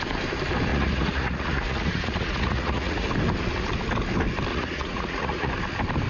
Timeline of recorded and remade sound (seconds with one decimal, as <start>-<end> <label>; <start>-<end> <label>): 0.0-0.7 recorded; 0.7-3.1 remade; 3.1-4.5 recorded; 4.5-5.5 remade; 5.5-6.1 recorded